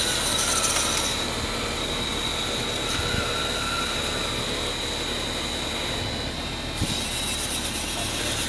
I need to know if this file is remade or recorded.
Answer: recorded